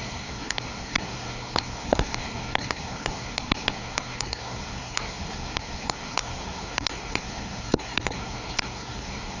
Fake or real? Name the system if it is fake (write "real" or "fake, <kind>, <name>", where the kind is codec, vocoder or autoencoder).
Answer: fake, codec, SNAC